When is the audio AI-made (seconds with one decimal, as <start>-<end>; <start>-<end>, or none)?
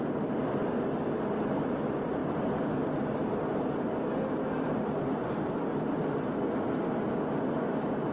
none